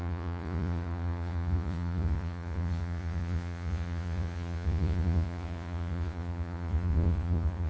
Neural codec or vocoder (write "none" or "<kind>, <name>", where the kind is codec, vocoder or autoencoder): vocoder, Vocos